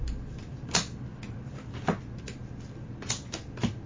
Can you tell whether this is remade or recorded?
recorded